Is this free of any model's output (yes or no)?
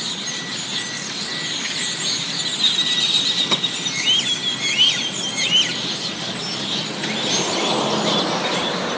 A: yes